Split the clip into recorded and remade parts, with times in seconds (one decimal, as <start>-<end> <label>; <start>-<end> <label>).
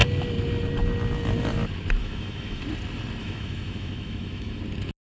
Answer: 0.0-2.0 recorded; 2.0-2.6 remade; 2.6-3.2 recorded; 3.2-4.6 remade; 4.6-5.0 recorded